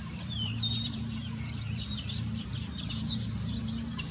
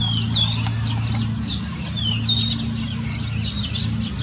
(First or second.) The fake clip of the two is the first